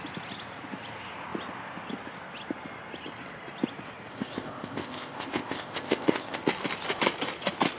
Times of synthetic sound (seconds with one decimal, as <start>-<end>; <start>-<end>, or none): 4.1-6.4